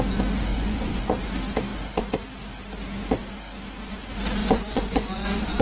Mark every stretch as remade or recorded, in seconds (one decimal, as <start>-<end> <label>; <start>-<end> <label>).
0.0-0.5 recorded; 0.5-1.0 remade; 1.0-4.4 recorded; 4.4-5.6 remade